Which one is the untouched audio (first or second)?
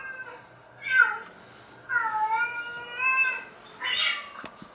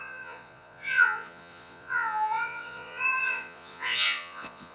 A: first